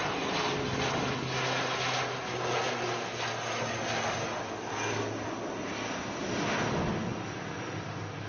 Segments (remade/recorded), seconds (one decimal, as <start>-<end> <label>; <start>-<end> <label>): 0.0-8.3 recorded